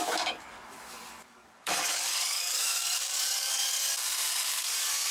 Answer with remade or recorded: remade